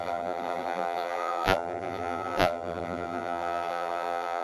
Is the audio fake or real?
fake